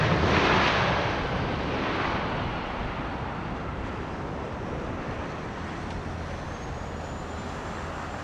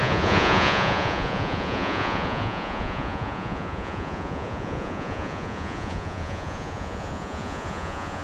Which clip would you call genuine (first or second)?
first